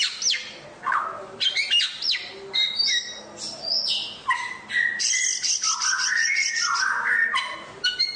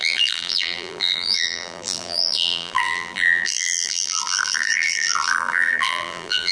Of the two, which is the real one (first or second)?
first